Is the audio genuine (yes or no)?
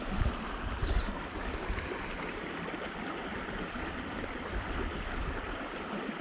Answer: no